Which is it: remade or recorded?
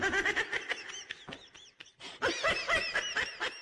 remade